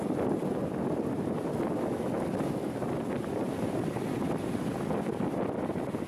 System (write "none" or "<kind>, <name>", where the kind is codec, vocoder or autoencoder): none